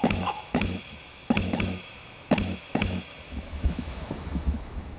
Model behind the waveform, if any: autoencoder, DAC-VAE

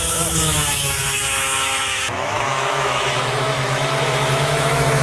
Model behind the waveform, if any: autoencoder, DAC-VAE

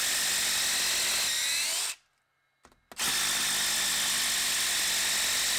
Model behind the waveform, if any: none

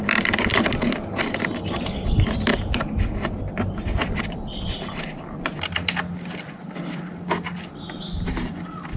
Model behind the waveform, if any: none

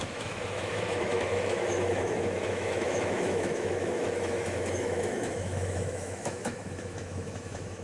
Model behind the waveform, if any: autoencoder, DAC-VAE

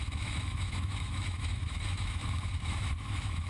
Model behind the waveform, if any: autoencoder, DAC-VAE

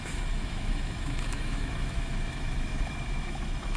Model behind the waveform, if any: autoencoder, DAC-VAE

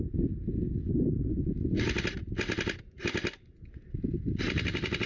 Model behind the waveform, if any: none